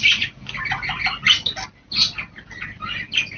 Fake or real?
real